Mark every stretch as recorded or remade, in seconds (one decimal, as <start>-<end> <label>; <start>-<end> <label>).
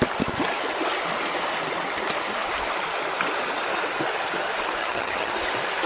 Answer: 0.0-4.8 recorded; 4.8-5.3 remade; 5.3-5.9 recorded